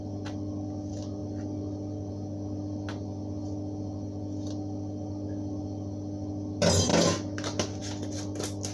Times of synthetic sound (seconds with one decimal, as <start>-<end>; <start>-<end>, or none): none